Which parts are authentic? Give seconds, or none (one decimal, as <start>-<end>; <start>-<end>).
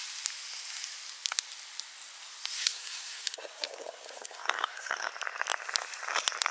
0.0-2.6; 5.1-6.5